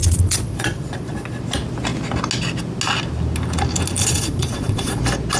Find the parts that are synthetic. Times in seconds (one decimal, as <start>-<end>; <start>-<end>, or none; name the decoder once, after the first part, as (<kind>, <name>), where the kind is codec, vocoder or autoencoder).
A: 0.0-1.4 (vocoder, Vocos); 4.0-5.0